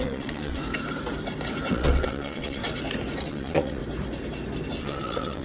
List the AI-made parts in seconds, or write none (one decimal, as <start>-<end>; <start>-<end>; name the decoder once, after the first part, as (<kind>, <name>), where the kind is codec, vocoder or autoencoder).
0.0-0.6 (vocoder, WaveNeXt); 1.7-2.6; 3.2-3.8; 4.8-5.4